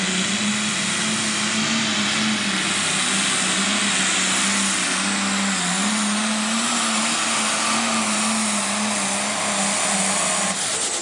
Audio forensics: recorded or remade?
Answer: recorded